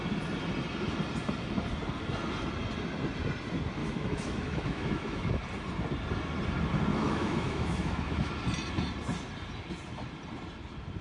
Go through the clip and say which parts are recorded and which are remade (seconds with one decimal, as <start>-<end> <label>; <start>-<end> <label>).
0.0-3.8 recorded; 3.8-5.3 remade; 5.3-6.9 recorded; 6.9-8.3 remade; 8.3-11.0 recorded